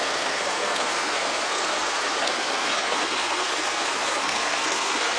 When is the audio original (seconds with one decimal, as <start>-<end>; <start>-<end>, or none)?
none